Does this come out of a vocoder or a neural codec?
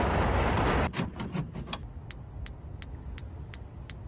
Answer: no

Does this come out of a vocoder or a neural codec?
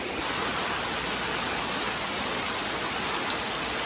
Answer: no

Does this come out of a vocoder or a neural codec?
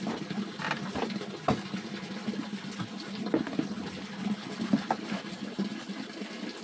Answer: no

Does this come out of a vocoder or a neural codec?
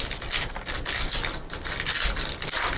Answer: no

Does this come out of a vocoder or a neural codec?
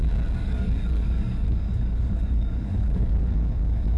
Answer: yes